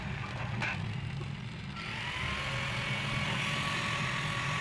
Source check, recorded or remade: recorded